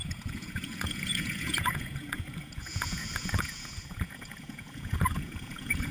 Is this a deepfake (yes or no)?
yes